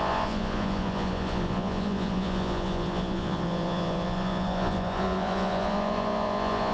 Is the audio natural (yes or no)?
no